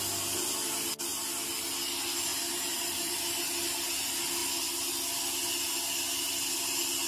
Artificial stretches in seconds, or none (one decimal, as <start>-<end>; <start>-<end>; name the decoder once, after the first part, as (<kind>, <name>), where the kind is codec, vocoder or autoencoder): 2.3-3.2 (vocoder, BigVGAN v2)